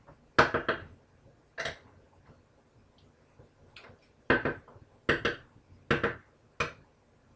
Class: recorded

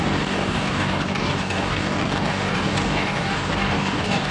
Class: remade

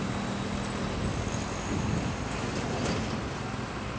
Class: recorded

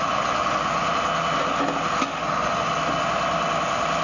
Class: recorded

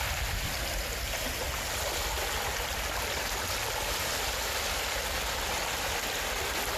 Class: recorded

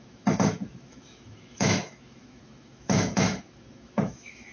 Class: remade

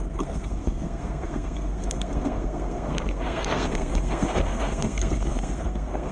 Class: remade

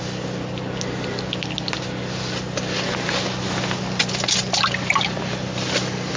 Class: recorded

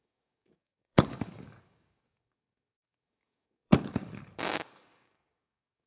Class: remade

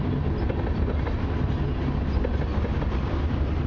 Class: recorded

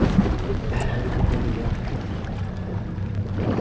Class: recorded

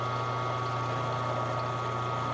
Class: recorded